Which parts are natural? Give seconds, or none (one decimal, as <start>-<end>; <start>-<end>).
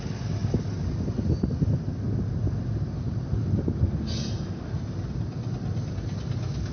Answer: 0.0-6.7